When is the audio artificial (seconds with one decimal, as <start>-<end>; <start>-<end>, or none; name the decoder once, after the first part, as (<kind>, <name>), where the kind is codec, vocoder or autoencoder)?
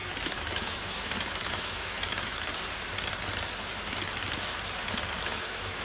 0.0-2.5 (autoencoder, DAC-VAE); 5.2-5.8